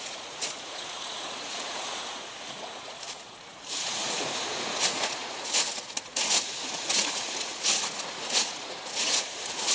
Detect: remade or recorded remade